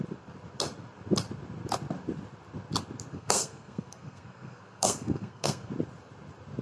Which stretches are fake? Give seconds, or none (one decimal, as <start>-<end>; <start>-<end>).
3.1-5.7